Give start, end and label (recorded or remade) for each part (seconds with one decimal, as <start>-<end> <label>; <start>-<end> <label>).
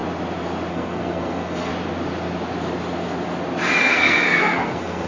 0.0-0.7 recorded; 0.7-1.7 remade; 1.7-3.8 recorded; 3.8-5.1 remade